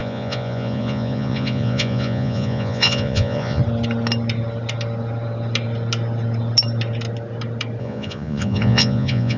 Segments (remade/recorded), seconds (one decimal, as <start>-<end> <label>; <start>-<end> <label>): 0.0-3.6 remade; 3.6-7.8 recorded; 7.8-9.4 remade

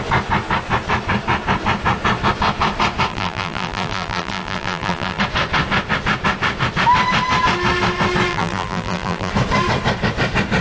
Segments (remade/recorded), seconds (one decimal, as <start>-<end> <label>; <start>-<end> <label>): 0.0-3.1 recorded; 3.1-5.2 remade; 5.2-8.3 recorded; 8.3-9.3 remade; 9.3-10.6 recorded

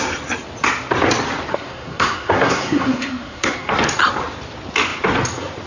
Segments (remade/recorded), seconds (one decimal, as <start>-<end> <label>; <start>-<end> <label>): 0.0-1.5 recorded; 1.5-3.7 remade; 3.7-5.7 recorded

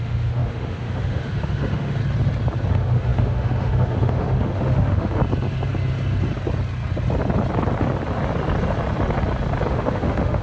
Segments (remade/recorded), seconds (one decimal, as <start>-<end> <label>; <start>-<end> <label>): 0.0-2.0 remade; 2.0-2.7 recorded; 2.7-5.2 remade; 5.2-9.7 recorded; 9.7-10.4 remade

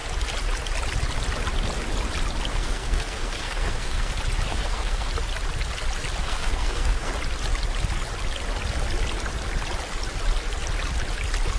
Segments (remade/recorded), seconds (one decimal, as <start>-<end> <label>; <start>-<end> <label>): 0.0-2.5 recorded; 2.5-4.1 remade; 4.1-4.5 recorded; 4.5-5.1 remade; 5.1-6.2 recorded; 6.2-7.1 remade; 7.1-11.6 recorded

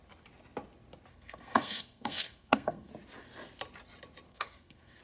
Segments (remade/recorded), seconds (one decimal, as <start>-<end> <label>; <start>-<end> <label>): 0.0-1.1 recorded; 1.1-2.9 remade; 2.9-4.3 recorded; 4.3-5.0 remade

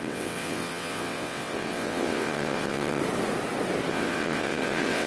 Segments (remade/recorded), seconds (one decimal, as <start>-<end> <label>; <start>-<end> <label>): 0.0-3.0 remade; 3.0-3.9 recorded; 3.9-5.1 remade